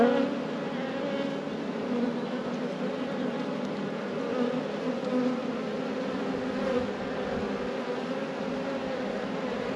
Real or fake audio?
real